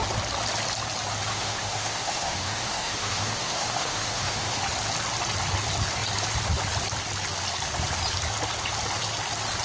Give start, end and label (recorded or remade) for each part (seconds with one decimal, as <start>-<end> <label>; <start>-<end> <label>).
0.0-1.3 recorded; 1.3-4.6 remade; 4.6-9.6 recorded